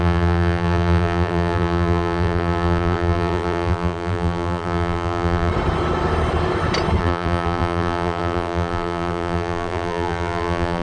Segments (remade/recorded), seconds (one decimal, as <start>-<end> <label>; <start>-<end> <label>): 0.0-5.5 remade; 5.5-7.0 recorded; 7.0-10.8 remade